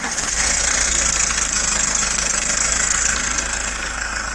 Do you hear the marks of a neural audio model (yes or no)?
yes